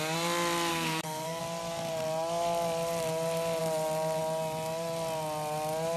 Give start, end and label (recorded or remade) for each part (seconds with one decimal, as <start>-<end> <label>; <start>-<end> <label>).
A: 0.0-0.7 recorded; 0.7-1.4 remade; 1.4-6.0 recorded